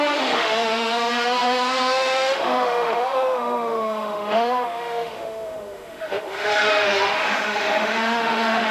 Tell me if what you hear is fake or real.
fake